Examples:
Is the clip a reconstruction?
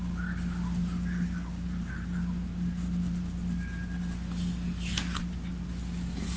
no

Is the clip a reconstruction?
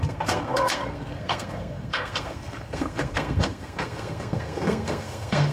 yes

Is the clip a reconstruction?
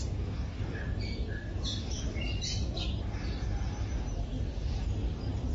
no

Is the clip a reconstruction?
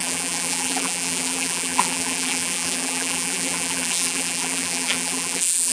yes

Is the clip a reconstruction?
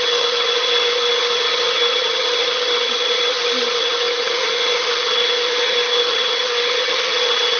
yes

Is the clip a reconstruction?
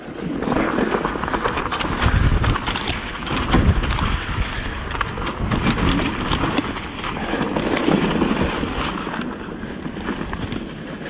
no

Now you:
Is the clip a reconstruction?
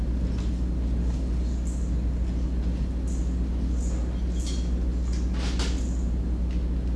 no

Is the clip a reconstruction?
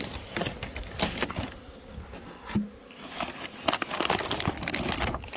no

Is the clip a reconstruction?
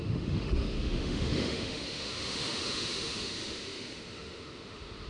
yes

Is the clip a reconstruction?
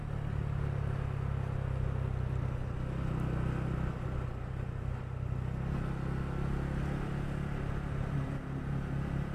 no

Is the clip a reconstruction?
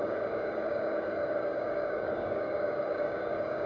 yes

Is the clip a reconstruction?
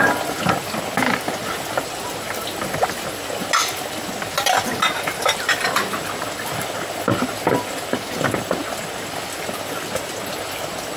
no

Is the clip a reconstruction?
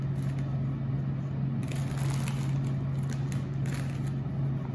no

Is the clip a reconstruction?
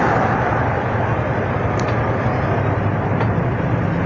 no